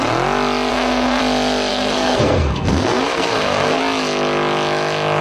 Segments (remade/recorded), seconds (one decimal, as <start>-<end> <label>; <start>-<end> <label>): 0.0-0.7 recorded; 0.7-1.2 remade; 1.2-1.7 recorded; 1.7-3.8 remade; 3.8-5.2 recorded